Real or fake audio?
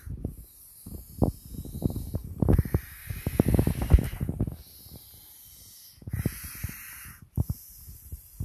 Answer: real